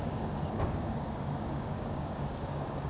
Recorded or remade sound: remade